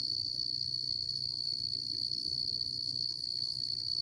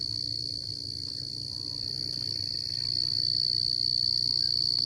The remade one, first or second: first